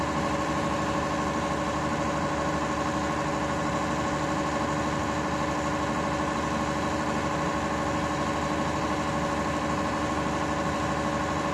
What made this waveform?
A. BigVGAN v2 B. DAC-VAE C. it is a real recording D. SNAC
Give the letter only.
C